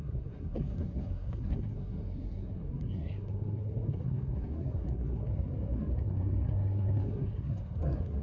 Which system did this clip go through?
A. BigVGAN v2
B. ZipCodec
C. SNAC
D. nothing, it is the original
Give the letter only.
C